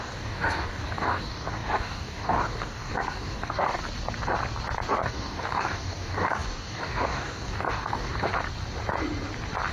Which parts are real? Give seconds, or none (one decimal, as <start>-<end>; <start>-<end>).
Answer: 3.8-4.9; 8.3-9.7